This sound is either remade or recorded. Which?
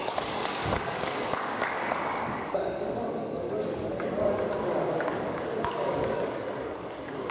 remade